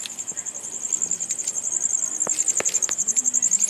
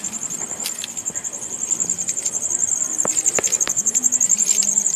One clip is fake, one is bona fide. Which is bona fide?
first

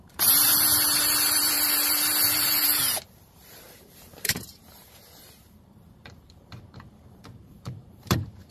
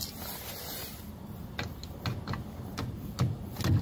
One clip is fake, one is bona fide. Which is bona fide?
second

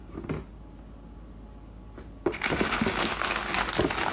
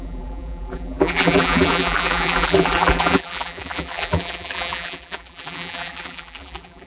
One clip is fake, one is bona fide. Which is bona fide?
first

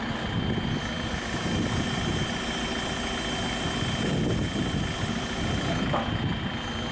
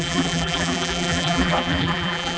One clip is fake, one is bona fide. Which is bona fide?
first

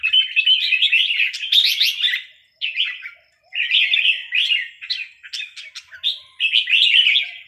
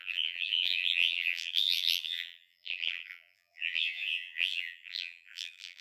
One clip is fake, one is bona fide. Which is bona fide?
first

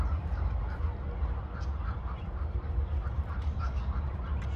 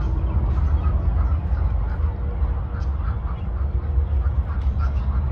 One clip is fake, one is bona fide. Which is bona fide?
second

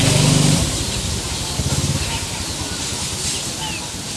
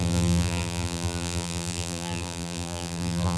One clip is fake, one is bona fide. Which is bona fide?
first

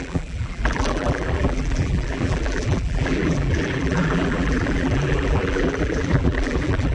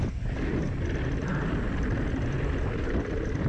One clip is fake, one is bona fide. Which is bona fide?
second